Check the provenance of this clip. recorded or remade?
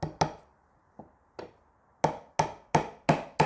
recorded